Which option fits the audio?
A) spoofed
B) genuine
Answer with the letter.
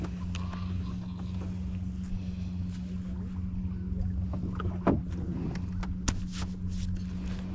B